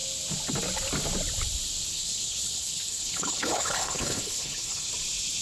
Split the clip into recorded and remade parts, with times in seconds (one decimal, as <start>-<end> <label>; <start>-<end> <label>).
0.0-1.9 recorded; 1.9-4.9 remade; 4.9-5.4 recorded